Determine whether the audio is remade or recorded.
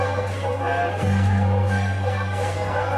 remade